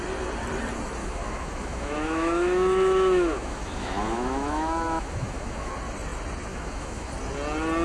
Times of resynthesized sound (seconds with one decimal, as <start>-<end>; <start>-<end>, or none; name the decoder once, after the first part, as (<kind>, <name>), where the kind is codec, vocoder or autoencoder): 1.0-5.7 (autoencoder, DAC-VAE); 6.5-7.1